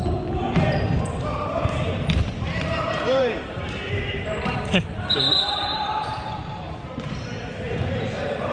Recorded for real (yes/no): no